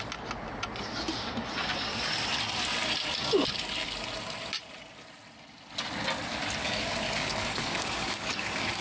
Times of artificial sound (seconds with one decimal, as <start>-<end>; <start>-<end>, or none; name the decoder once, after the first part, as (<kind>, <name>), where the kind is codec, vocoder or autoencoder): 6.6-8.8 (codec, DAC)